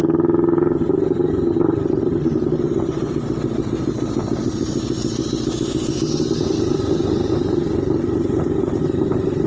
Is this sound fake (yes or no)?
no